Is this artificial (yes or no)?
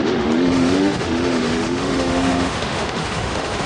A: yes